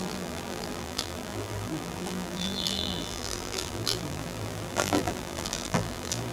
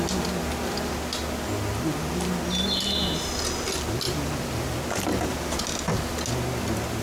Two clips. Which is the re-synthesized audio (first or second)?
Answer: first